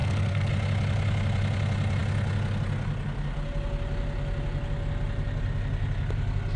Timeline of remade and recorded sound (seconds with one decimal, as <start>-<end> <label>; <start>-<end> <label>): 0.0-0.5 remade; 0.5-6.6 recorded